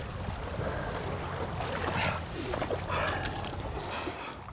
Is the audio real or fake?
real